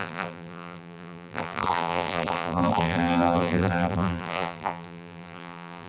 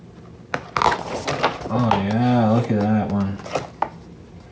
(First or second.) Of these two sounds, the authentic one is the second